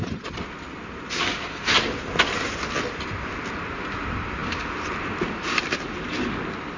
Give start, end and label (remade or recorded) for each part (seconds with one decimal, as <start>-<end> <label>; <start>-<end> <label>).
0.0-4.4 recorded; 4.4-5.9 remade; 5.9-6.8 recorded